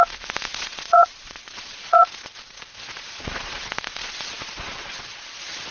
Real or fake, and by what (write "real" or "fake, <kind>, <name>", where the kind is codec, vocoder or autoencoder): fake, vocoder, Vocos